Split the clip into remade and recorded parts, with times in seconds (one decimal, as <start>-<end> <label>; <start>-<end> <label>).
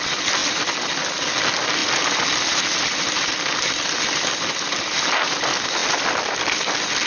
0.0-7.1 recorded